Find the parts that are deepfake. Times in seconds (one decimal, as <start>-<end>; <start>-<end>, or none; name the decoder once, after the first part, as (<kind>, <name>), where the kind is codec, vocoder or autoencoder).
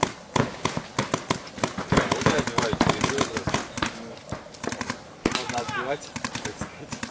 3.6-4.5 (vocoder, BigVGAN v2)